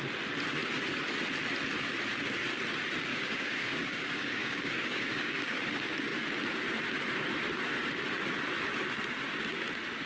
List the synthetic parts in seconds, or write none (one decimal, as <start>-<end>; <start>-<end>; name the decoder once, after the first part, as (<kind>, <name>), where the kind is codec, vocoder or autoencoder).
3.1-5.6 (codec, DAC)